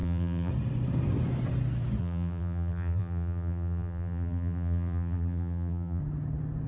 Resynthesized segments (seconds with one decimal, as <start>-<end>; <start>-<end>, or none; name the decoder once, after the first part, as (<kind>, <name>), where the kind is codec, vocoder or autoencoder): 0.0-0.5 (vocoder, BigVGAN v2); 2.0-6.0